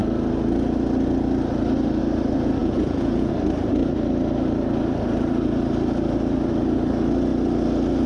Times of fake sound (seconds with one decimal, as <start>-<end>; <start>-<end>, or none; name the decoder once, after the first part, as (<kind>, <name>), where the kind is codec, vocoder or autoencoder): 2.6-3.3 (vocoder, Vocos)